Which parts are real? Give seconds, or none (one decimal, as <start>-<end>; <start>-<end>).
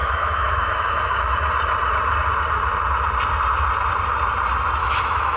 1.2-4.8